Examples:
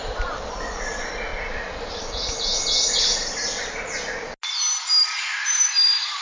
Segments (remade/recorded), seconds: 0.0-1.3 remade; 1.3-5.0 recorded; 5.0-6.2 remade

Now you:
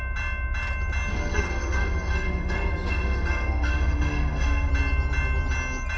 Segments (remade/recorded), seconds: 0.0-1.1 recorded; 1.1-4.7 remade; 4.7-6.0 recorded

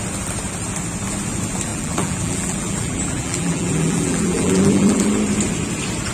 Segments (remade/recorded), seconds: 0.0-1.7 recorded; 1.7-5.1 remade; 5.1-6.1 recorded

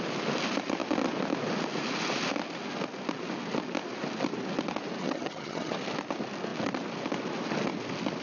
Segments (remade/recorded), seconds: 0.0-5.0 recorded; 5.0-5.7 remade; 5.7-8.2 recorded

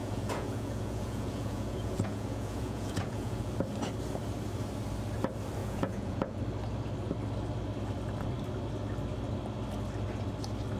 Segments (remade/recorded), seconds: 0.0-3.5 remade; 3.5-5.6 recorded; 5.6-6.4 remade; 6.4-10.8 recorded